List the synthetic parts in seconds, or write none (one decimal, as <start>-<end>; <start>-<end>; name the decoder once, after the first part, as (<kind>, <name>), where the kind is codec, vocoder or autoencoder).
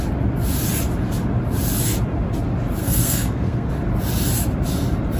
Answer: 2.8-3.7 (codec, SNAC)